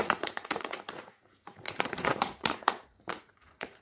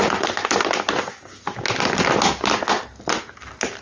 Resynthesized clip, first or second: first